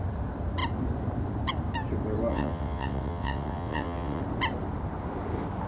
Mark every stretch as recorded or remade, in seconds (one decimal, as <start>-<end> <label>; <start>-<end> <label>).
0.0-2.3 recorded; 2.3-4.2 remade; 4.2-5.7 recorded